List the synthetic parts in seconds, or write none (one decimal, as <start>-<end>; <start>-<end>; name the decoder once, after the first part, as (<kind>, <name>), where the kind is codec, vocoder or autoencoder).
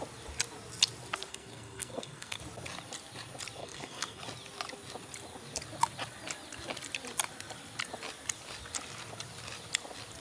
1.3-2.4 (codec, SNAC); 3.6-4.2